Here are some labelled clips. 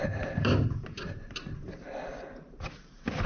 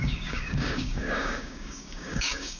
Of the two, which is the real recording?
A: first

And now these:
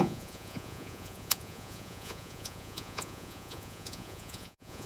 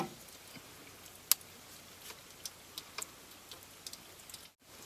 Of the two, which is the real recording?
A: second